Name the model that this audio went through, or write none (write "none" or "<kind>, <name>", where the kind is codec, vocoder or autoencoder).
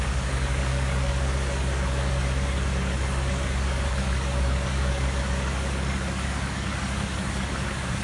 codec, DAC